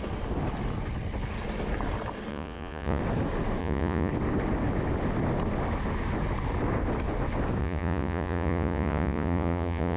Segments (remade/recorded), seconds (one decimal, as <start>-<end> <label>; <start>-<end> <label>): 0.0-2.3 recorded; 2.3-3.0 remade; 3.0-3.6 recorded; 3.6-4.1 remade; 4.1-7.6 recorded; 7.6-10.0 remade